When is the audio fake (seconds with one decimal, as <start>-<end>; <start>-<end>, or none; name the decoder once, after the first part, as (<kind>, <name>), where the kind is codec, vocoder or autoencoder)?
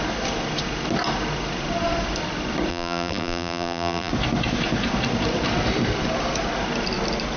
2.7-4.1 (vocoder, BigVGAN v2)